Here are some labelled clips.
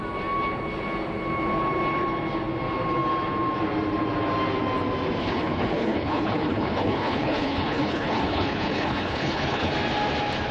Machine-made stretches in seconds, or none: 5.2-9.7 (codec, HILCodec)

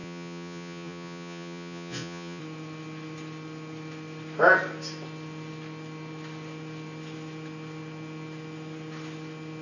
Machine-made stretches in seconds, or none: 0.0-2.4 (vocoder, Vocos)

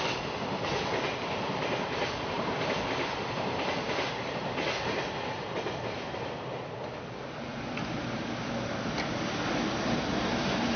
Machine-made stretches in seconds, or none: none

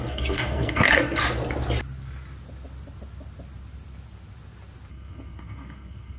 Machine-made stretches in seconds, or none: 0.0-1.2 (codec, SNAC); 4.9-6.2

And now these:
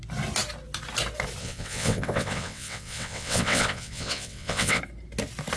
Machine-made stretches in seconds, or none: 1.4-4.8 (vocoder, WaveNeXt)

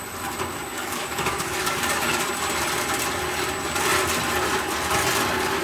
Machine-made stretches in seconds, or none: 0.7-2.3 (codec, DAC)